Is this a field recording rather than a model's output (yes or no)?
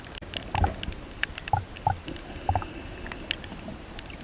yes